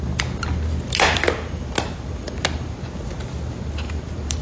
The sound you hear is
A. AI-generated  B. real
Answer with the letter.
B